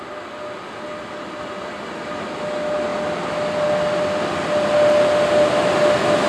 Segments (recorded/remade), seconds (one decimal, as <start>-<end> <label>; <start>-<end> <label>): 0.0-6.3 recorded